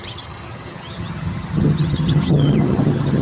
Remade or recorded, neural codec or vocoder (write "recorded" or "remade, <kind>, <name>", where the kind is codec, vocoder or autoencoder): remade, vocoder, HiFi-GAN